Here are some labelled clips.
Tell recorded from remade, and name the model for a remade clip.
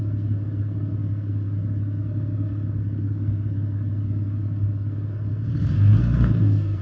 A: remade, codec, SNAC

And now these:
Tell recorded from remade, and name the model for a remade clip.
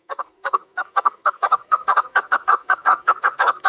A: remade, codec, SNAC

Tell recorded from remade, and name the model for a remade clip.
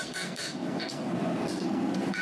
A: remade, codec, SNAC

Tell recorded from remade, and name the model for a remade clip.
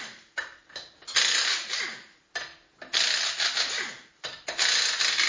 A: recorded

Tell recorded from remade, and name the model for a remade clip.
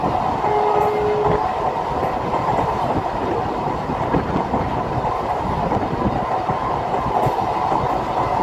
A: recorded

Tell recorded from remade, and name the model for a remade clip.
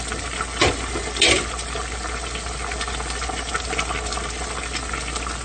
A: recorded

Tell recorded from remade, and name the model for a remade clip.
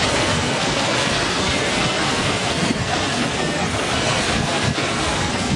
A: remade, codec, SNAC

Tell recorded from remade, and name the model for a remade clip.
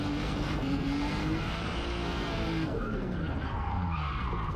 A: remade, codec, SNAC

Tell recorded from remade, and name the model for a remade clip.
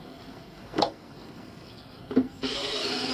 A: remade, codec, SNAC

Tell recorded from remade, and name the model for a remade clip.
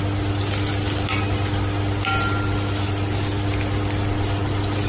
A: recorded